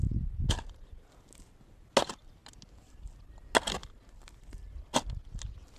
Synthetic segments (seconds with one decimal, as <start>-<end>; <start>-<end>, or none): none